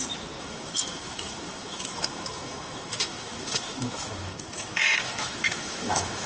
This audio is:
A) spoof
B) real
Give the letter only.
A